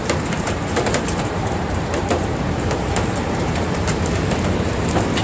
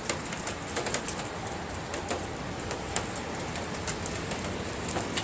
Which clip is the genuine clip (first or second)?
second